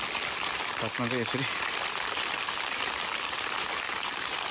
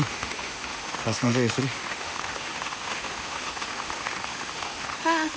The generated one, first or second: second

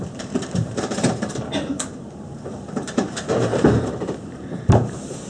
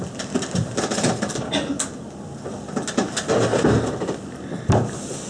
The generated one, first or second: first